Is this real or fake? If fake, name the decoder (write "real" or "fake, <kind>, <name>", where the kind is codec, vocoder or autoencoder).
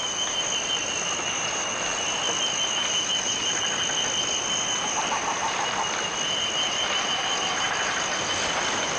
real